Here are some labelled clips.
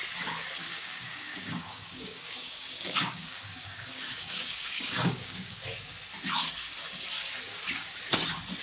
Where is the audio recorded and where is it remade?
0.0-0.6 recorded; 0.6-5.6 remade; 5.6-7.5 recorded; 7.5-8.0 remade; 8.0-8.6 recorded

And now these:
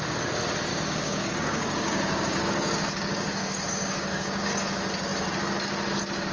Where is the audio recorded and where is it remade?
0.0-0.7 recorded; 0.7-4.5 remade; 4.5-6.3 recorded

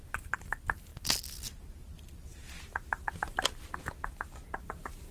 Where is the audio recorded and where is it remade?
0.0-5.1 recorded

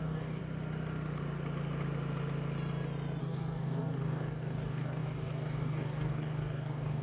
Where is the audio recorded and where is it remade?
0.0-0.4 remade; 0.4-3.2 recorded; 3.2-7.0 remade